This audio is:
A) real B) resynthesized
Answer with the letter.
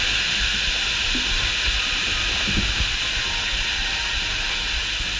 A